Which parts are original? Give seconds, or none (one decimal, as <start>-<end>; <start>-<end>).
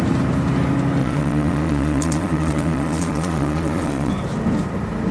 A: 0.0-1.0; 4.1-5.1